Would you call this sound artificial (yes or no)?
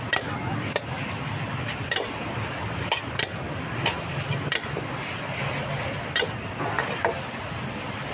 no